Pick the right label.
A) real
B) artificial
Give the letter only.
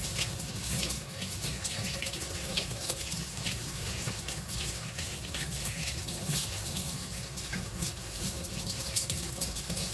B